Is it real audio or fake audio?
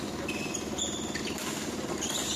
real